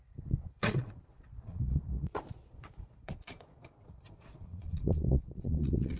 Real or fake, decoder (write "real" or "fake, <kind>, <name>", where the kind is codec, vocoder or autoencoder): fake, vocoder, Vocos